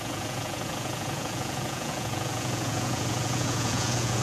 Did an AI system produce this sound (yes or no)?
yes